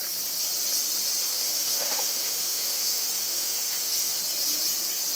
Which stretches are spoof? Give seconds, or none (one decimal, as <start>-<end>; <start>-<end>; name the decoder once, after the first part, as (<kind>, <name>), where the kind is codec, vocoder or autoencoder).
1.3-4.2 (autoencoder, DAC-VAE)